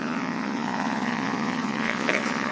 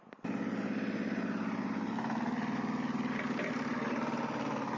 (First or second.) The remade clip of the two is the first